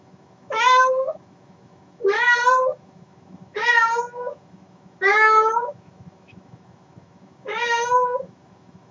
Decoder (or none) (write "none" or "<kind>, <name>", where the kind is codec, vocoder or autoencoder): autoencoder, DAC-VAE